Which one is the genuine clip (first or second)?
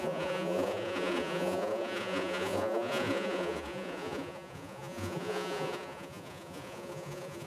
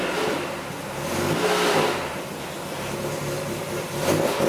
second